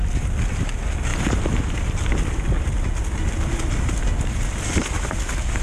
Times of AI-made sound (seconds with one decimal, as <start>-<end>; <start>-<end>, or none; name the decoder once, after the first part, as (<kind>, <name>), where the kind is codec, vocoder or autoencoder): none